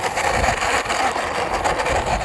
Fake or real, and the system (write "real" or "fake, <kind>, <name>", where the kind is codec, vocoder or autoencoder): real